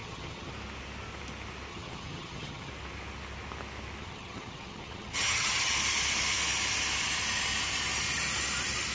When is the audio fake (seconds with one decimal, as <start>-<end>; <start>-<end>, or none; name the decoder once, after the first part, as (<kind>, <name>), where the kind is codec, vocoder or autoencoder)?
0.0-0.5 (vocoder, HiFi-GAN); 1.7-2.7; 4.0-5.7